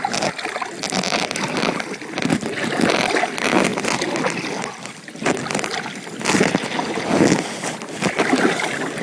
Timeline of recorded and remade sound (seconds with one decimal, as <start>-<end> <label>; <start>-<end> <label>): 0.0-9.0 recorded